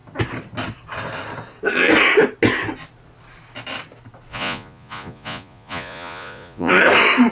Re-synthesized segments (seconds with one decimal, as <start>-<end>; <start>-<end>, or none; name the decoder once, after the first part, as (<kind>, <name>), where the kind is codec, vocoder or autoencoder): 4.3-6.7 (vocoder, Vocos)